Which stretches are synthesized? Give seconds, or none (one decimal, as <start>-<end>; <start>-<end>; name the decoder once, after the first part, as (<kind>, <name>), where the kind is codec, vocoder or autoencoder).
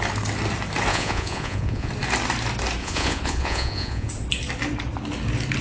0.9-1.9 (vocoder, Vocos); 2.8-4.1